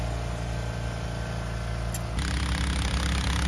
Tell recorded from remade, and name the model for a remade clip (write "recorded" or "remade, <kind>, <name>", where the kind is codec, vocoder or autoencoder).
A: recorded